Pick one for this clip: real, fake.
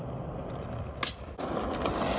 real